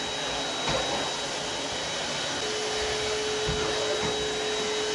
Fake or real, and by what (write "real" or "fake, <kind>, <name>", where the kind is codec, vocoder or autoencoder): real